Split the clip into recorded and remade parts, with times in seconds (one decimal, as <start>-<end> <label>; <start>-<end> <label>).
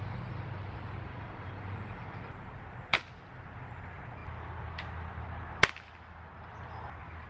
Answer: 0.0-1.1 recorded; 1.1-2.2 remade; 2.2-7.3 recorded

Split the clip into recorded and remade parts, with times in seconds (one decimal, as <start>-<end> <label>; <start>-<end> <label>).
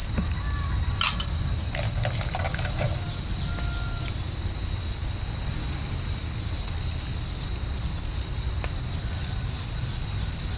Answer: 0.0-10.6 recorded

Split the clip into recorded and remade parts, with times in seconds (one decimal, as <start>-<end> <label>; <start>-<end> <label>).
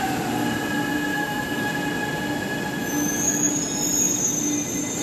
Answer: 0.0-1.1 recorded; 1.1-1.7 remade; 1.7-2.8 recorded; 2.8-3.5 remade; 3.5-5.0 recorded